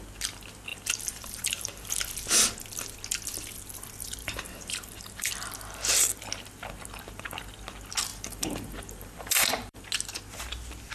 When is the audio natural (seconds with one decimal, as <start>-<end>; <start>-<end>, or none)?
0.0-0.7; 1.9-4.2; 5.3-8.1; 9.8-10.9